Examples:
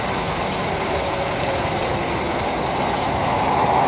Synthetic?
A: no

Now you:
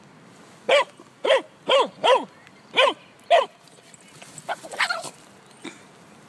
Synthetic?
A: no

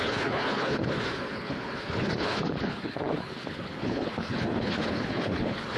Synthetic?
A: yes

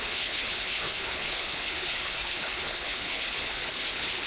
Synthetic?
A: yes